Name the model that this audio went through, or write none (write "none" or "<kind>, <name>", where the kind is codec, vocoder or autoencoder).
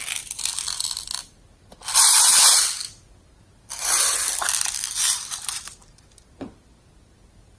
none